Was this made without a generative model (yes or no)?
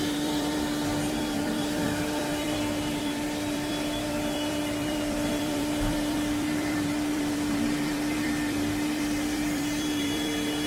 no